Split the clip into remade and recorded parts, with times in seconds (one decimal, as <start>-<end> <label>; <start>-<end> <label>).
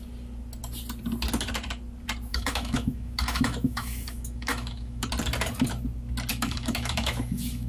0.0-2.3 recorded; 2.3-5.1 remade; 5.1-6.3 recorded; 6.3-7.7 remade